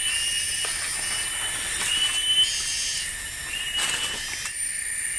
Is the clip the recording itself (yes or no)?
yes